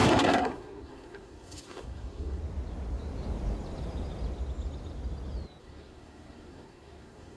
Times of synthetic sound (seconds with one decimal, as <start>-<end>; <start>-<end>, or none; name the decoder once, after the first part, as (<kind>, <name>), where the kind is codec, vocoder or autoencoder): 0.0-2.4 (codec, SNAC); 5.6-7.4